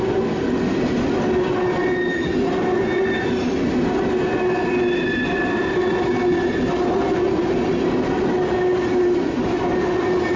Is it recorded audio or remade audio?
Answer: recorded